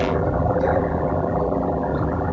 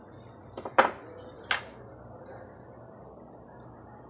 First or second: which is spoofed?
first